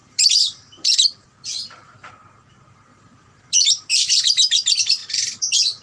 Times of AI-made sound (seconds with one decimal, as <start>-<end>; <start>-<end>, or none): 0.0-2.1; 2.9-4.0; 5.0-5.8